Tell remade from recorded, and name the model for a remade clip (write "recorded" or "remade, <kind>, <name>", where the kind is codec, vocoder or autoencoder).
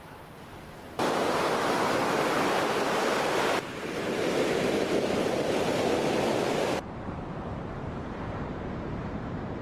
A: remade, vocoder, BigVGAN v2